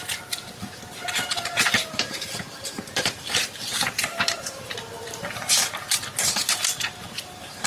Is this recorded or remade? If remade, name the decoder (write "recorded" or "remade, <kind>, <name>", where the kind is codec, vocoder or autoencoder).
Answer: remade, vocoder, BigVGAN v2